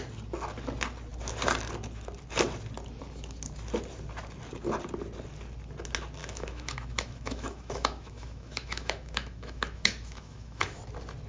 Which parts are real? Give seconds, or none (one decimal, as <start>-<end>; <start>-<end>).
0.0-6.2; 10.8-11.3